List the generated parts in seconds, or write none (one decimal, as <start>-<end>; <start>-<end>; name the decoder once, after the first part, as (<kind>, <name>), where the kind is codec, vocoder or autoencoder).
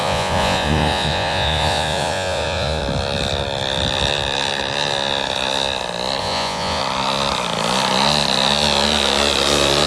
0.0-2.8 (vocoder, Vocos); 6.2-6.8